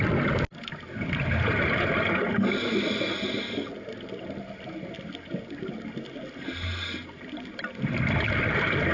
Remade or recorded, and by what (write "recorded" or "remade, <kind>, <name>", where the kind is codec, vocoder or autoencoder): recorded